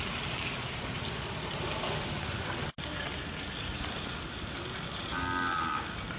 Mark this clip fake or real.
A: real